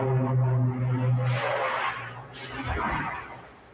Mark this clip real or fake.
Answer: real